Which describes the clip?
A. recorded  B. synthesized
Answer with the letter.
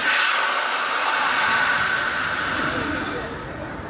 A